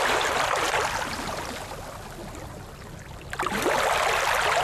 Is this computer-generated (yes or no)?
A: no